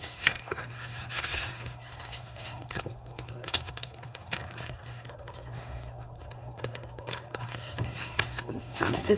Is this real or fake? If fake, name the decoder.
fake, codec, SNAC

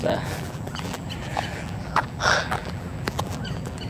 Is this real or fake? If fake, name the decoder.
fake, vocoder, BigVGAN v2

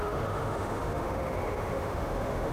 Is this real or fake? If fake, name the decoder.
fake, autoencoder, DAC-VAE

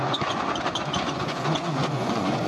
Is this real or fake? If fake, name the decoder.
fake, vocoder, Vocos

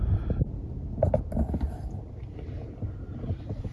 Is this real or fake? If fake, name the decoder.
real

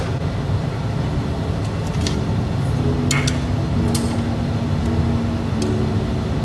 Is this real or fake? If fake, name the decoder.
real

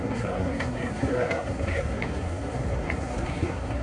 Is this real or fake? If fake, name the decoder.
fake, codec, SNAC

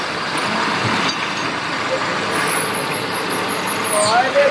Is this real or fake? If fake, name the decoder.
real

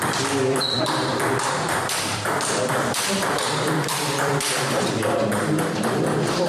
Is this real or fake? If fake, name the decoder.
fake, vocoder, BigVGAN v2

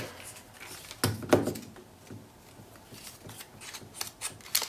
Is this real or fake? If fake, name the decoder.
real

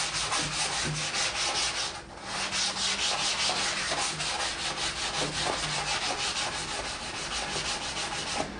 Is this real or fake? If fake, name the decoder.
real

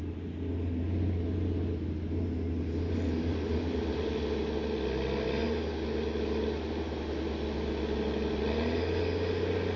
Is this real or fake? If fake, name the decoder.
real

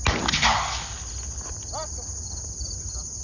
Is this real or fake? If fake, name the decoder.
real